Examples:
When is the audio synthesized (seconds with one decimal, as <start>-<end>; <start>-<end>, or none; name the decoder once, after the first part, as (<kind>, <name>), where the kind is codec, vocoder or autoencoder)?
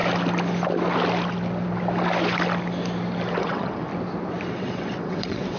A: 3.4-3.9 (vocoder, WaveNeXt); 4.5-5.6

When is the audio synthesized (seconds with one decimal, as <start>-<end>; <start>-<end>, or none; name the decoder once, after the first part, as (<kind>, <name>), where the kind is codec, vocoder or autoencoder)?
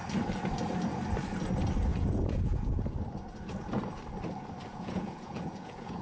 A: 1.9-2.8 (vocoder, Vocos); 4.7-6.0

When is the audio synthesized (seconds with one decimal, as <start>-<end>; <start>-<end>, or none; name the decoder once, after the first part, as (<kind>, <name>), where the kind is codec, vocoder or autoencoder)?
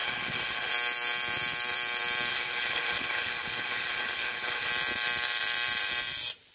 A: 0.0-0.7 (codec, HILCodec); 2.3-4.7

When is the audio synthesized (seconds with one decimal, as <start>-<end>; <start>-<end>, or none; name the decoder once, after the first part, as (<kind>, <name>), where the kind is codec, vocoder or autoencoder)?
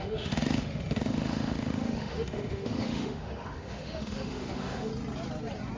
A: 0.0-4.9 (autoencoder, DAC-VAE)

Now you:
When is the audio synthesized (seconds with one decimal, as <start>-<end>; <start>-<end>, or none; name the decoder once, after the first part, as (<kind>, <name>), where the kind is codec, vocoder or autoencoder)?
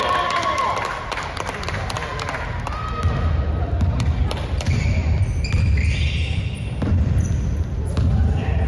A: 0.0-2.1 (vocoder, BigVGAN v2); 4.2-8.7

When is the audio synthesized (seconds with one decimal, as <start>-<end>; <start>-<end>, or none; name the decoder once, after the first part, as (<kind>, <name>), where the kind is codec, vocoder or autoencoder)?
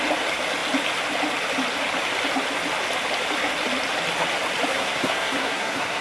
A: 4.7-6.0 (codec, SNAC)